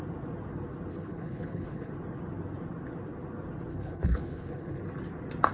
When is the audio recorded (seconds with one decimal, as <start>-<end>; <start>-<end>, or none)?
0.0-0.9; 1.9-3.7; 4.8-5.5